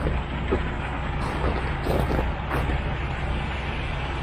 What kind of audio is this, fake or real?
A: real